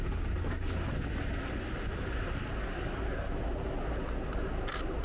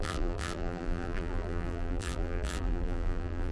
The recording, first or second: first